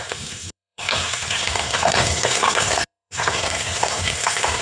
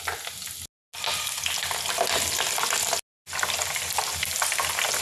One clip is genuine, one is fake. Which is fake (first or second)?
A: first